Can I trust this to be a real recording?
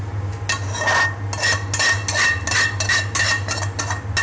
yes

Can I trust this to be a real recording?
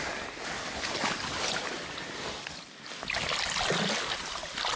yes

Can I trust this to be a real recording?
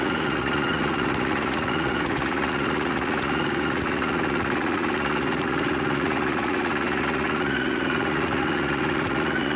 no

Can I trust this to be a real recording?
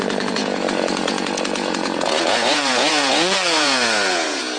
no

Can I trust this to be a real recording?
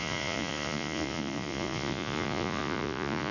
no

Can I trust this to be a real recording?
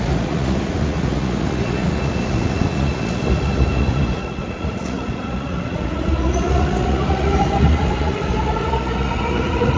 no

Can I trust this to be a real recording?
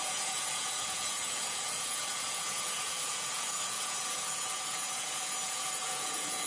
no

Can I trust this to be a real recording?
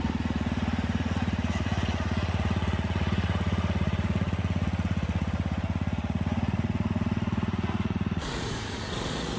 no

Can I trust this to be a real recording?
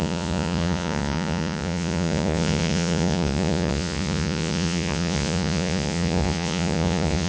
no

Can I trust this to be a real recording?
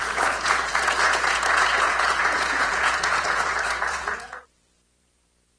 no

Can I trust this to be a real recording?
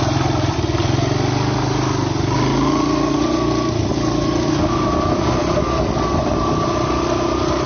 yes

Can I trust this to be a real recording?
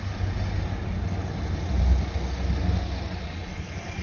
yes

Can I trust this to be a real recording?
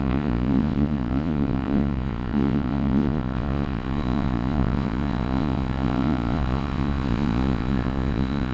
no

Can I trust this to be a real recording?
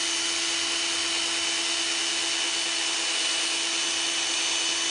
yes